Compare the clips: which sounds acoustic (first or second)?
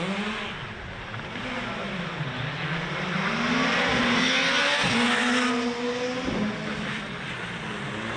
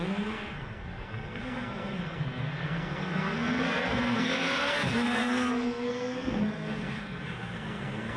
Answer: first